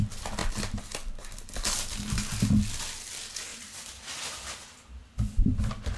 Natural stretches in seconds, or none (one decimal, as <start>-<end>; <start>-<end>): 0.0-3.5; 4.3-6.0